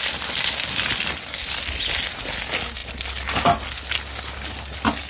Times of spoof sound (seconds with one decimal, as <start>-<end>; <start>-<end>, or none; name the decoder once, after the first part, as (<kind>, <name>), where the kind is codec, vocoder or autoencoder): none